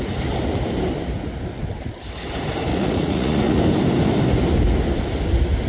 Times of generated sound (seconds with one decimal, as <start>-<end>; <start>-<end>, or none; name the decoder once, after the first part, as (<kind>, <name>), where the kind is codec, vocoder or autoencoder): 2.7-3.6 (vocoder, Vocos)